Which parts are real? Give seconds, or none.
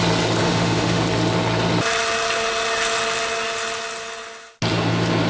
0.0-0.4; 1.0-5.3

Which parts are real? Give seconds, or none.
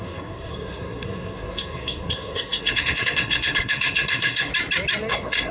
4.5-5.1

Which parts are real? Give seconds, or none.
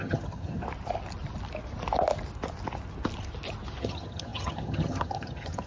0.6-3.8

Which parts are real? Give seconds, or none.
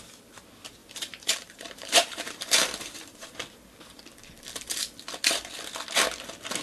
0.0-0.8; 4.0-6.6